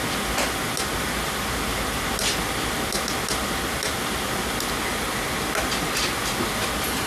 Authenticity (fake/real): real